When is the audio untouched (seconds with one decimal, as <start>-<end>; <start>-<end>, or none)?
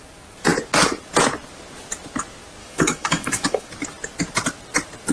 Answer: 0.0-2.6; 3.7-5.1